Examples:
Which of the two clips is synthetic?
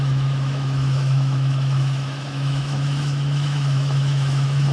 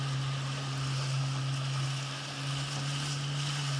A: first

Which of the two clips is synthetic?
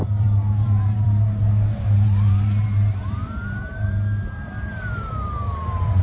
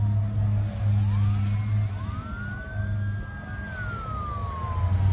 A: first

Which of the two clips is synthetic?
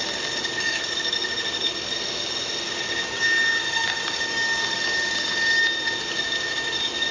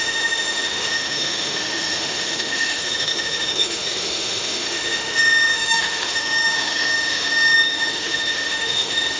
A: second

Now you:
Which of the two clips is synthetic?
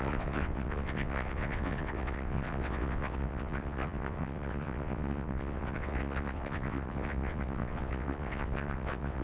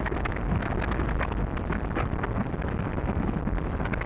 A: first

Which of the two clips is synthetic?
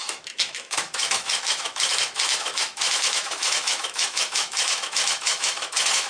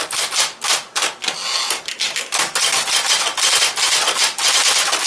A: first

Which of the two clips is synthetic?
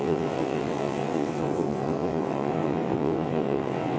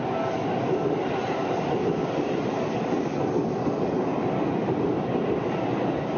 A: first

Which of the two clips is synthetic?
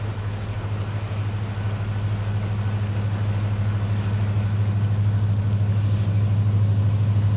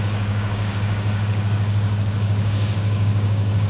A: second